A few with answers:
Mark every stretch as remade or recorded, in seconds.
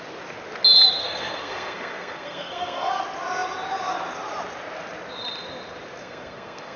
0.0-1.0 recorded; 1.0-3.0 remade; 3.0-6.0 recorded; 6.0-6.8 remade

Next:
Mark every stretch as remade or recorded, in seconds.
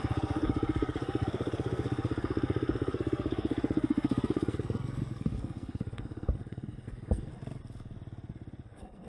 0.0-7.3 remade; 7.3-8.7 recorded; 8.7-9.1 remade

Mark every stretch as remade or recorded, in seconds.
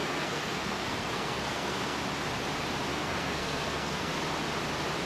0.0-2.0 remade; 2.0-2.9 recorded; 2.9-4.1 remade; 4.1-5.1 recorded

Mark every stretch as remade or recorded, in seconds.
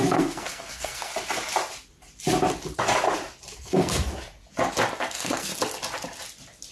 0.0-1.1 remade; 1.1-3.6 recorded; 3.6-4.1 remade; 4.1-5.0 recorded; 5.0-5.5 remade; 5.5-6.7 recorded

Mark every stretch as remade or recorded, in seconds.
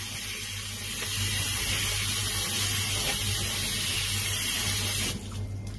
0.0-5.8 recorded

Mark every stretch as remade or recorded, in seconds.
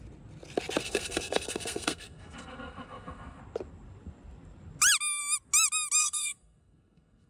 0.0-0.8 recorded; 0.8-3.4 remade; 3.4-6.0 recorded; 6.0-7.3 remade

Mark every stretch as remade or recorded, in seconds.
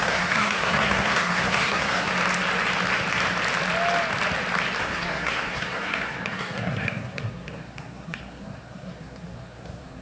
0.0-2.1 remade; 2.1-4.8 recorded; 4.8-10.0 remade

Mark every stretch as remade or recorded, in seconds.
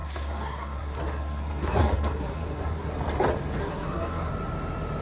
0.0-2.9 remade; 2.9-3.6 recorded; 3.6-4.3 remade; 4.3-5.0 recorded